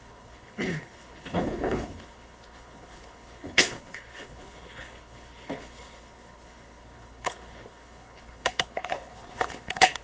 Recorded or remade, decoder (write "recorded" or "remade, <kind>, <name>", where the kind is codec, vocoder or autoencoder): remade, codec, HILCodec